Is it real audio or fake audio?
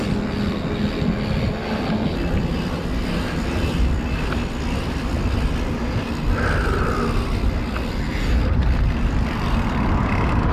real